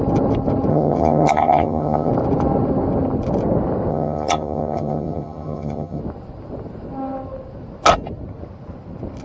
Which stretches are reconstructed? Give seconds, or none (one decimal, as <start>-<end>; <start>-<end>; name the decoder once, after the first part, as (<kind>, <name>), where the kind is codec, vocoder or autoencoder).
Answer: 0.7-2.1 (vocoder, HiFi-GAN); 3.9-6.0